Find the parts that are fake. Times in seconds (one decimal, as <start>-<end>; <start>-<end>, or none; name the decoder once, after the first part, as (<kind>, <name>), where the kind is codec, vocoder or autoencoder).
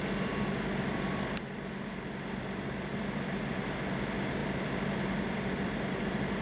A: none